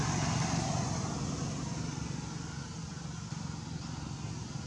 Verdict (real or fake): real